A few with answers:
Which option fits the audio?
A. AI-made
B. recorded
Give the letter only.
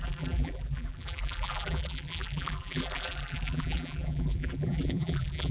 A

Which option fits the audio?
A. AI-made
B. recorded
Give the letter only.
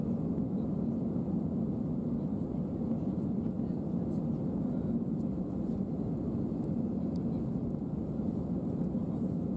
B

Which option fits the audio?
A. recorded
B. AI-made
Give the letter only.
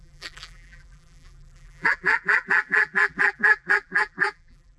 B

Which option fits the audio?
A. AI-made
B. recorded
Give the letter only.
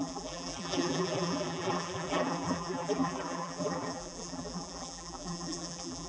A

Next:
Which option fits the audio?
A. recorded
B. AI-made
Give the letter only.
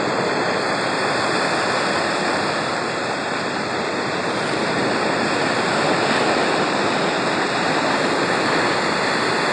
A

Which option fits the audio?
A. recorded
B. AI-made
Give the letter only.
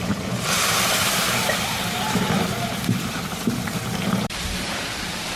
B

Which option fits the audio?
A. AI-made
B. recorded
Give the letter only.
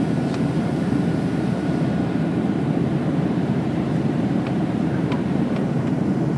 A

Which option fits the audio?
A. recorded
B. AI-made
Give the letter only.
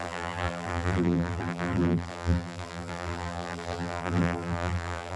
B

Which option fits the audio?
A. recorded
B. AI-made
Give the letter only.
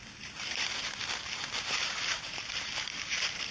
B